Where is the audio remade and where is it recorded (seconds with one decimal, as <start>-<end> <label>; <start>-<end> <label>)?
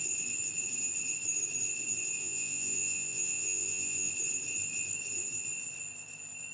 0.0-2.2 recorded; 2.2-4.1 remade; 4.1-6.5 recorded